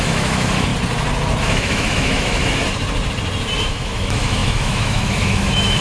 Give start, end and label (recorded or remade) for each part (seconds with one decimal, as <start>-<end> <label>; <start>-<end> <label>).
0.0-0.7 remade; 0.7-1.4 recorded; 1.4-2.6 remade; 2.6-3.7 recorded; 3.7-5.8 remade